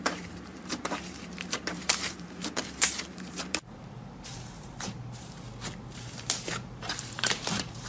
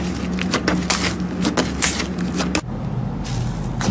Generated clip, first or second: first